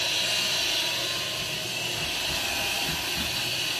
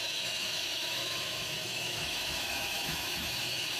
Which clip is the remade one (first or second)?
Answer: second